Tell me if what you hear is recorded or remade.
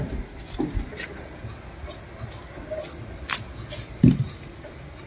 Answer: recorded